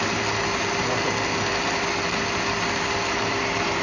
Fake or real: real